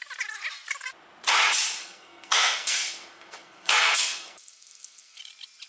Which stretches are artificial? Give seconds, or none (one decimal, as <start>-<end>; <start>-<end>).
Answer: 1.8-5.2